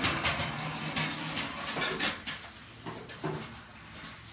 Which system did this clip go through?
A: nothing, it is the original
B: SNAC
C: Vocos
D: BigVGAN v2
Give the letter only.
A